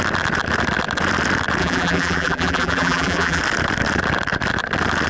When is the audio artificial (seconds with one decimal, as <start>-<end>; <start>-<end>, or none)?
1.6-3.4